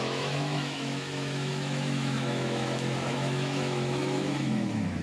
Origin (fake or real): fake